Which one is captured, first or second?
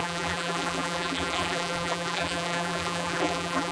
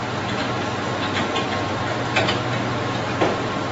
second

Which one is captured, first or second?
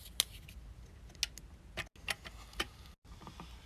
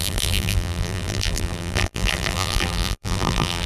first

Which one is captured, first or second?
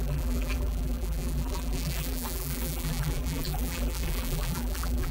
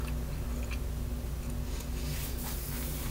second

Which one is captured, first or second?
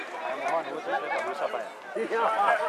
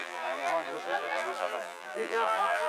first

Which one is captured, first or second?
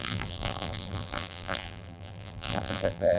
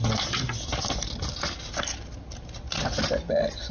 second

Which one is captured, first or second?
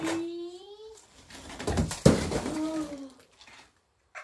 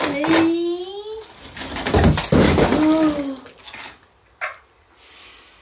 second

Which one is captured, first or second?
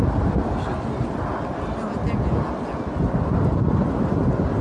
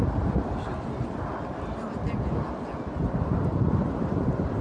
first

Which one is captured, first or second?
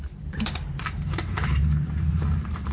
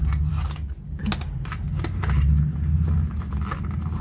second